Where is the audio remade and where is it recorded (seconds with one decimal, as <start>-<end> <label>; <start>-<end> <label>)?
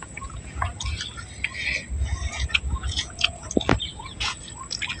0.0-0.7 remade; 0.7-2.2 recorded; 2.2-3.5 remade; 3.5-3.9 recorded; 3.9-4.4 remade; 4.4-5.0 recorded